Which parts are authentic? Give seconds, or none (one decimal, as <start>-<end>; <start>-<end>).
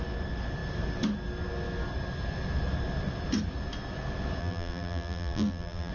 0.0-4.4